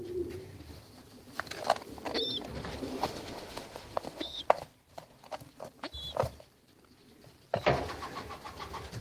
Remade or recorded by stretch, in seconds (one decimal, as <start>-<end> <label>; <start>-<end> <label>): 0.0-2.9 recorded; 2.9-4.4 remade; 4.4-9.0 recorded

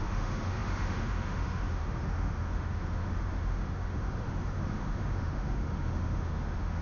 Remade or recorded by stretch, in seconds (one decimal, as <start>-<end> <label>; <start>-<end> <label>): 0.0-6.8 remade

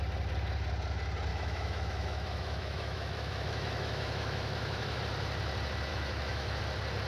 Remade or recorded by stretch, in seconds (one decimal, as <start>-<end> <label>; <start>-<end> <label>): 0.0-1.3 recorded; 1.3-5.0 remade; 5.0-5.9 recorded; 5.9-6.6 remade; 6.6-7.1 recorded

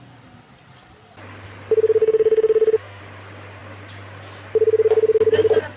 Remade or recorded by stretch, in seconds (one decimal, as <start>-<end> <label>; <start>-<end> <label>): 0.0-2.0 recorded; 2.0-3.0 remade; 3.0-5.8 recorded

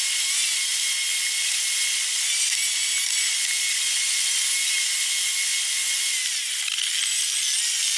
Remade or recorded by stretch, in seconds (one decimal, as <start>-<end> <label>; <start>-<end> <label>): 0.0-8.0 recorded